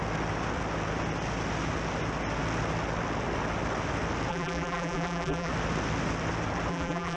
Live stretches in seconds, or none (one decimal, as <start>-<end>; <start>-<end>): 0.0-4.3; 5.5-6.7